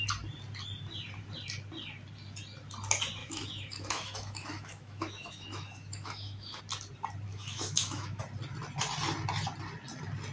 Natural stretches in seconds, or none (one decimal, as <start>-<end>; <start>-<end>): 0.0-3.2; 6.6-7.3; 8.2-10.3